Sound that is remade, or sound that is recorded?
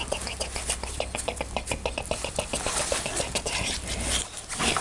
recorded